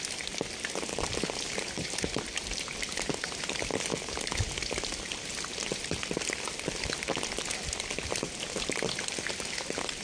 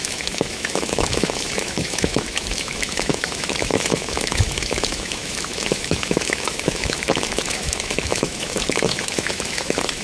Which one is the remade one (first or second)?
second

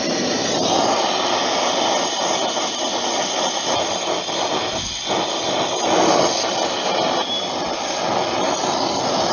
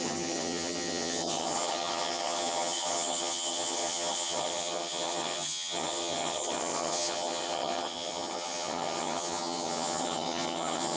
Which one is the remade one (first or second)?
second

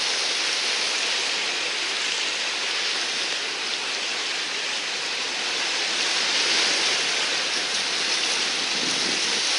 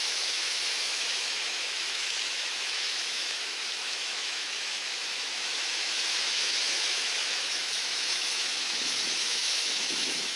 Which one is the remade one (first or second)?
second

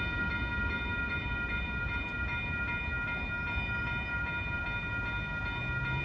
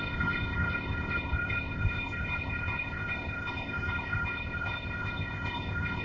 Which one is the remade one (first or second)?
second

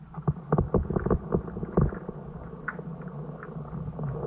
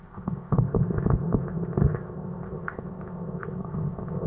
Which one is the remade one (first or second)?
second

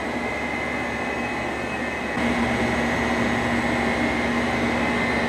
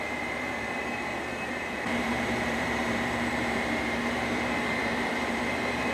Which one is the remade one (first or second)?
second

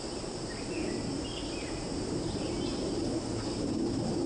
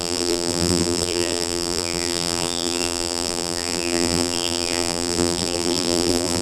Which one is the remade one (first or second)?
second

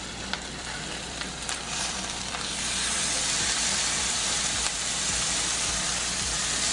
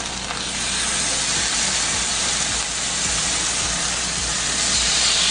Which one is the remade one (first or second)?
first